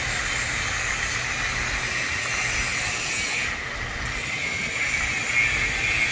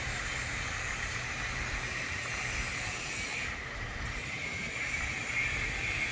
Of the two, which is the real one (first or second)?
first